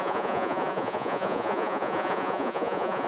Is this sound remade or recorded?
remade